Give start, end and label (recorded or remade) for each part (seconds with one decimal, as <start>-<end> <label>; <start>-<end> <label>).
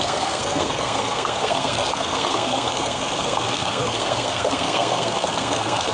0.0-5.9 remade